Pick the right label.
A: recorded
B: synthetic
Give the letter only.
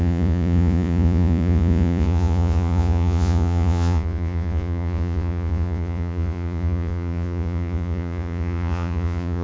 B